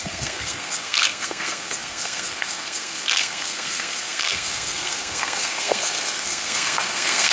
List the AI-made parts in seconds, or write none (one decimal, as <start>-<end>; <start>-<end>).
0.0-7.3